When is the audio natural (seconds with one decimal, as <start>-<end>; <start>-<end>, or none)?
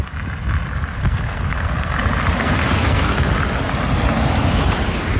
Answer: 0.0-1.0; 2.0-2.4; 3.2-5.2